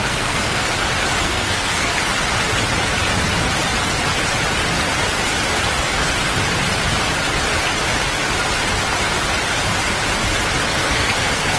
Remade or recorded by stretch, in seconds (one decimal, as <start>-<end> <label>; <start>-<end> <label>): 0.0-0.7 remade; 0.7-1.2 recorded; 1.2-1.9 remade; 1.9-10.8 recorded; 10.8-11.6 remade